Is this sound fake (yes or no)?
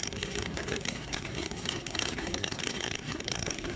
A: yes